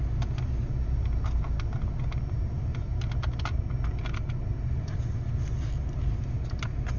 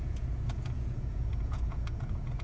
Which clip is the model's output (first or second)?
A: second